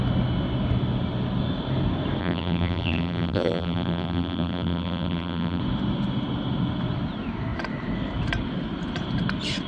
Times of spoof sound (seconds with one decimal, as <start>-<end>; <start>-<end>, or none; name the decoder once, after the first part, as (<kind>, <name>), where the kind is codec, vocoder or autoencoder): 2.2-5.6 (vocoder, BigVGAN v2)